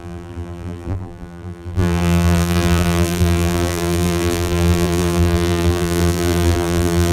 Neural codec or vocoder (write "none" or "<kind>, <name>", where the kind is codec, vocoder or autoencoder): vocoder, BigVGAN v2